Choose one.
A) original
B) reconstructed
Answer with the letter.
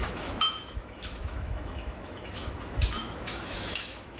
B